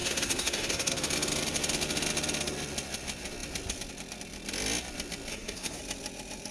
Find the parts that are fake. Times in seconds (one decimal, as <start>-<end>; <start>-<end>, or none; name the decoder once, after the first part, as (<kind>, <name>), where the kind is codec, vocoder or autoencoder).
0.0-1.0 (codec, SNAC); 5.3-5.8

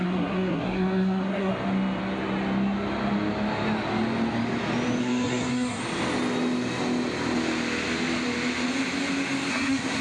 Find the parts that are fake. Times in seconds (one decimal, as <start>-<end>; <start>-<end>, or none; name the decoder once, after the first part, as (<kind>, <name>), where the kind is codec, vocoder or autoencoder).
0.0-1.5 (codec, SNAC); 5.0-5.8; 9.5-10.0

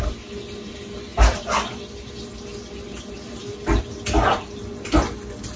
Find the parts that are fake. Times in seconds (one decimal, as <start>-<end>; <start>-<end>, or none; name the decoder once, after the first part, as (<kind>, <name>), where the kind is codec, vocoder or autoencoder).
none

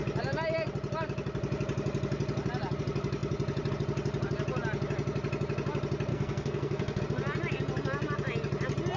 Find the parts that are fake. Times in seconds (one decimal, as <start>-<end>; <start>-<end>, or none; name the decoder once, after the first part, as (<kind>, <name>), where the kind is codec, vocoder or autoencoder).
6.1-7.0 (codec, SNAC)

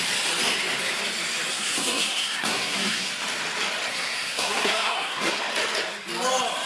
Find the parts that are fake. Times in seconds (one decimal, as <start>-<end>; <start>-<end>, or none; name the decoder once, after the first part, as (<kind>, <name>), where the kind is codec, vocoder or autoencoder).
1.5-3.1 (codec, SNAC); 3.9-5.4